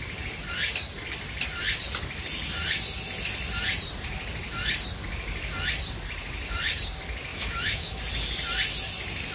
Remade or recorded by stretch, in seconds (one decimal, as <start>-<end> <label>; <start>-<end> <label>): 0.0-7.3 recorded; 7.3-8.0 remade; 8.0-9.3 recorded